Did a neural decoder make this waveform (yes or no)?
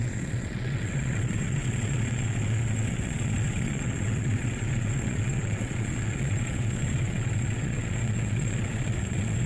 yes